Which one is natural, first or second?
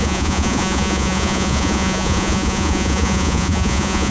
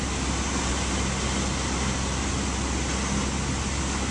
second